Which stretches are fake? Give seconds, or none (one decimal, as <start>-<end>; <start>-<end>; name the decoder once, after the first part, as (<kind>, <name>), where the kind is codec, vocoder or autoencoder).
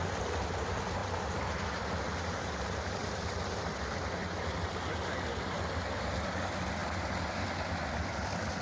3.0-3.7 (vocoder, BigVGAN v2); 4.2-4.8